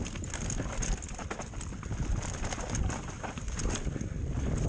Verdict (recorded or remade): recorded